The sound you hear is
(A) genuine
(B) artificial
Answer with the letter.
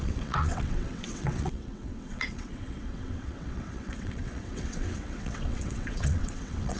B